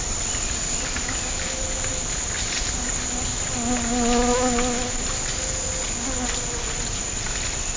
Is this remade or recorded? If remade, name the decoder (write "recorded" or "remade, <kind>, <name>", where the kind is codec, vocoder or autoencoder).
recorded